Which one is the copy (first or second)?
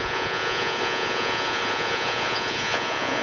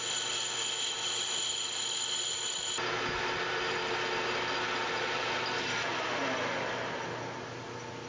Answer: first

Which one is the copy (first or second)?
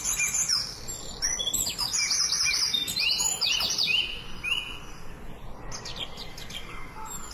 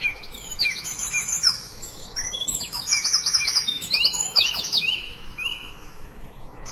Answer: second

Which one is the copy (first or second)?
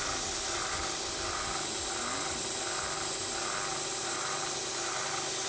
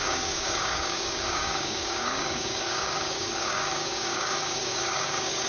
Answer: second